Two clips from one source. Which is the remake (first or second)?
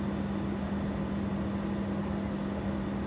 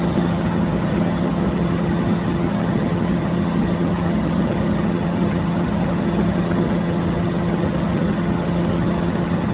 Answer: second